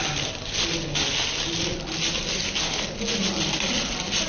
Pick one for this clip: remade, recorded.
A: recorded